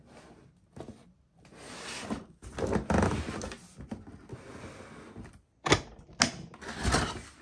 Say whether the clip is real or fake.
real